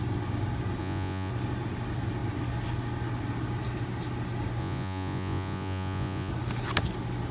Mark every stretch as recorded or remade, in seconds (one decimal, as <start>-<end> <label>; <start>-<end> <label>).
0.0-0.8 recorded; 0.8-1.3 remade; 1.3-4.6 recorded; 4.6-6.3 remade; 6.3-7.3 recorded